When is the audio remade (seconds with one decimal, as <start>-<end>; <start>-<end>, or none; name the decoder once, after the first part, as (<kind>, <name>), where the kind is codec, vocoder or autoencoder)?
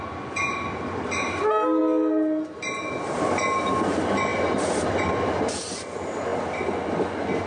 none